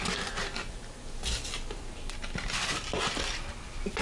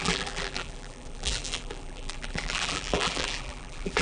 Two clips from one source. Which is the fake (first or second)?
second